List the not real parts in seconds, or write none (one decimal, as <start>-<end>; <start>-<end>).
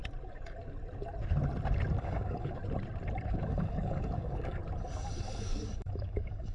2.0-2.6; 3.3-4.6; 5.2-6.5